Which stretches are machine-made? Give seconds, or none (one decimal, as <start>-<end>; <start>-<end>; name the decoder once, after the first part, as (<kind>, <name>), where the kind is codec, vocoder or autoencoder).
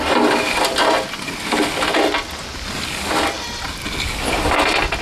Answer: none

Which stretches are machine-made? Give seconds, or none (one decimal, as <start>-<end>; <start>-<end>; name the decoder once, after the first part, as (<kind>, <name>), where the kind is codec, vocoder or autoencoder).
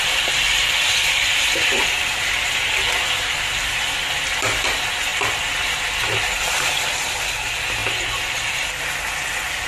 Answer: none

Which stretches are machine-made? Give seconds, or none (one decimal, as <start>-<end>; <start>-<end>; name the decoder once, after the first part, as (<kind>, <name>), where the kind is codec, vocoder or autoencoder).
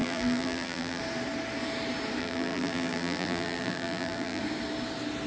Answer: 0.0-1.0 (vocoder, BigVGAN v2); 2.2-4.4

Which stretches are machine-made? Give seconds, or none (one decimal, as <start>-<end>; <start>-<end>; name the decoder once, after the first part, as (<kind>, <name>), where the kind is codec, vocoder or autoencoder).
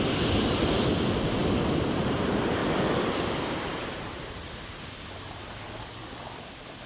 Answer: none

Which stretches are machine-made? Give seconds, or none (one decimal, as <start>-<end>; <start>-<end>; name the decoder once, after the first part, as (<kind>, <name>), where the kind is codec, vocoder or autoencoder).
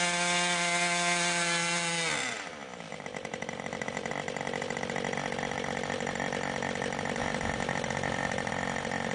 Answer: 2.9-4.1 (vocoder, BigVGAN v2); 7.2-8.5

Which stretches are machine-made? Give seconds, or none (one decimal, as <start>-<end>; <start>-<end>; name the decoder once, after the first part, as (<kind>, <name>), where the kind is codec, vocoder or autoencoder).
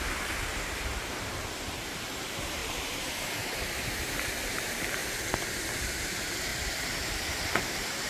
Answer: 0.0-5.0 (vocoder, BigVGAN v2); 5.7-6.5; 7.0-8.1